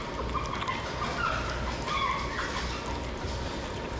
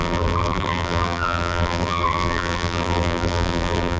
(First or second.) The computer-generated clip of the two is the second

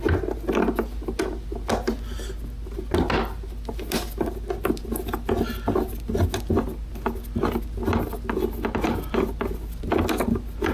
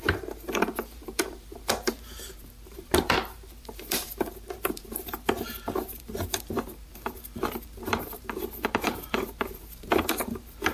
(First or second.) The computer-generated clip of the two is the second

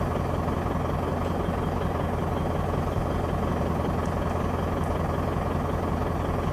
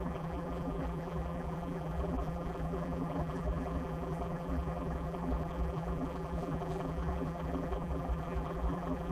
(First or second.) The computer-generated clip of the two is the second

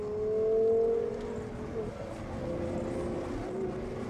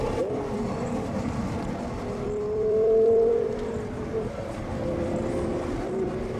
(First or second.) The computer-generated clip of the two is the second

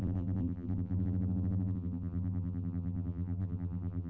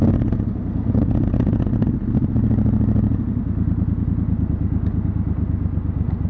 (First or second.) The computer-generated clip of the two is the first